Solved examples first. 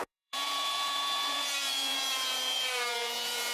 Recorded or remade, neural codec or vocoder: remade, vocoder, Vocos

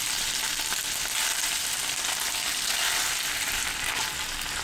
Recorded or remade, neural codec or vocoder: recorded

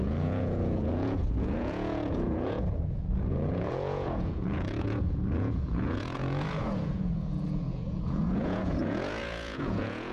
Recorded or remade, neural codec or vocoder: remade, vocoder, Vocos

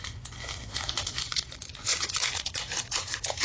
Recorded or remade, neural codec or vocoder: remade, vocoder, Vocos